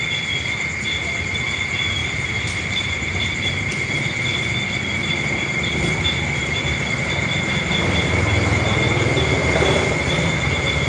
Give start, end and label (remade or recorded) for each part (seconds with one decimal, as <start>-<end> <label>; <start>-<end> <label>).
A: 0.0-2.0 recorded; 2.0-3.7 remade; 3.7-4.3 recorded; 4.3-7.4 remade; 7.4-9.4 recorded; 9.4-9.9 remade; 9.9-10.9 recorded